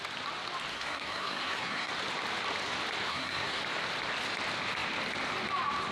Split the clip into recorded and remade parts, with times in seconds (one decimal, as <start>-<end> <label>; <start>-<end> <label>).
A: 0.0-0.7 recorded; 0.7-1.9 remade; 1.9-3.1 recorded; 3.1-3.6 remade; 3.6-5.9 recorded

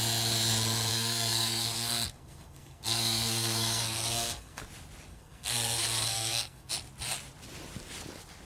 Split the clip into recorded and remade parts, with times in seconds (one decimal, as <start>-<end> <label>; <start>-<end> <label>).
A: 0.0-0.9 recorded; 0.9-4.6 remade; 4.6-5.1 recorded; 5.1-6.7 remade; 6.7-8.4 recorded

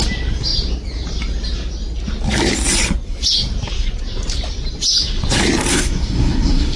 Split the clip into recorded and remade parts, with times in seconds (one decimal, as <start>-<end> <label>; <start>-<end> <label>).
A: 0.0-5.7 recorded; 5.7-6.8 remade

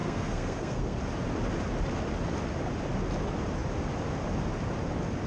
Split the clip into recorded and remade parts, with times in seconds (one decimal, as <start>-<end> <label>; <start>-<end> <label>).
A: 0.0-1.0 remade; 1.0-5.3 recorded

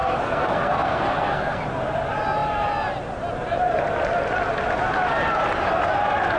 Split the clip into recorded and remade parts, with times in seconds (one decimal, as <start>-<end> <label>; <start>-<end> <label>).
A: 0.0-1.6 remade; 1.6-6.4 recorded

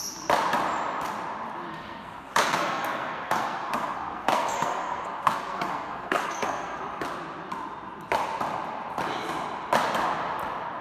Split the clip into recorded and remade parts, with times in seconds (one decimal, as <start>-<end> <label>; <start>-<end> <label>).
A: 0.0-1.7 recorded; 1.7-6.8 remade; 6.8-10.8 recorded

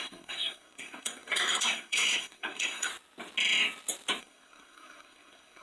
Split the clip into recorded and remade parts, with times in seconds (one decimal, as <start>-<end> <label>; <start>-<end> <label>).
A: 0.0-2.9 remade; 2.9-4.2 recorded; 4.2-5.6 remade